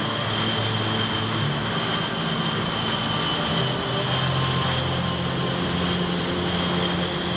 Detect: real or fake real